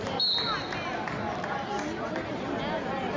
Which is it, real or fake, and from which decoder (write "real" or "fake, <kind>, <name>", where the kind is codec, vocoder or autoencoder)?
real